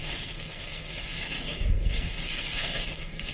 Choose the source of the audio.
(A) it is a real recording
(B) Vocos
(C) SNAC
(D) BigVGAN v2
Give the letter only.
C